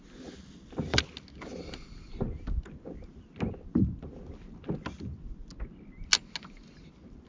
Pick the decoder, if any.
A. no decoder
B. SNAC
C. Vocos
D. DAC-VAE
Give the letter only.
A